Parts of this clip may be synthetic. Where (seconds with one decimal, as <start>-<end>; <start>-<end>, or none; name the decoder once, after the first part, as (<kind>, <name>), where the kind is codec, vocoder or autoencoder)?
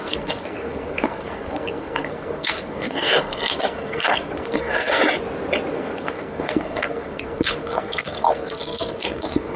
0.0-5.0 (codec, SNAC); 5.7-9.6